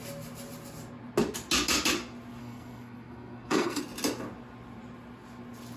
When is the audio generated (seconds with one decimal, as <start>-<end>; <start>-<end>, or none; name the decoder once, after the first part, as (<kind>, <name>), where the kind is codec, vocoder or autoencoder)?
2.4-3.8 (codec, SNAC)